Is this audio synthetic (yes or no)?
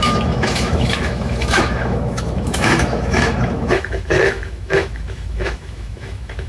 yes